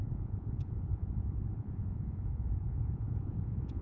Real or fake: fake